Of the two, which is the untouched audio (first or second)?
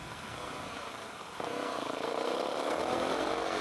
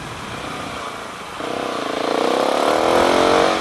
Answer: second